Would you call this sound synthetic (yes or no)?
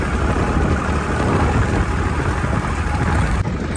no